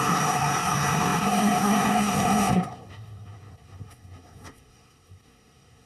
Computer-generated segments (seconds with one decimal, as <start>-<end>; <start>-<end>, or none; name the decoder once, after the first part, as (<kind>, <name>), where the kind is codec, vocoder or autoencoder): 0.0-5.9 (codec, SNAC)